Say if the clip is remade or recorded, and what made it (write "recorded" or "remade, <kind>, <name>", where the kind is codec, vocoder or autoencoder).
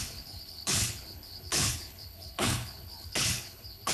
remade, codec, HILCodec